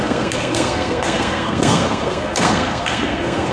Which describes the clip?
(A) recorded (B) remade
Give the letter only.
B